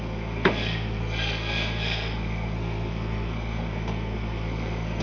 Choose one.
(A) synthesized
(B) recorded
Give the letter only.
A